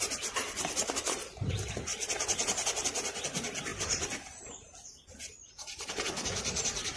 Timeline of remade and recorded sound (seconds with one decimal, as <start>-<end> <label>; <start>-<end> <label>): 0.0-7.0 recorded